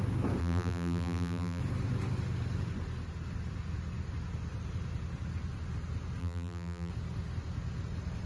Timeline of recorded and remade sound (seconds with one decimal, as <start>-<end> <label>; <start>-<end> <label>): 0.0-0.4 recorded; 0.4-1.6 remade; 1.6-6.2 recorded; 6.2-6.9 remade; 6.9-8.3 recorded